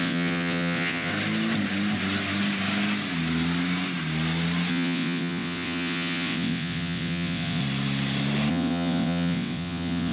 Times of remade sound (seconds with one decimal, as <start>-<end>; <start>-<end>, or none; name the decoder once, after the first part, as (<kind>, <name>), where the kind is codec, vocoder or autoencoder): 0.0-1.1 (vocoder, WaveNeXt); 4.7-7.6; 8.5-10.1